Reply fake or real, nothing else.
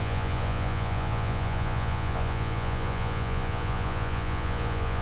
fake